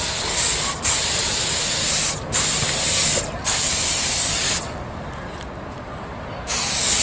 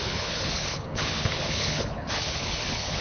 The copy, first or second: second